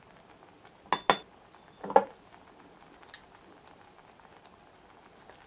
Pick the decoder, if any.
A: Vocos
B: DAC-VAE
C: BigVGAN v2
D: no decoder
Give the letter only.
D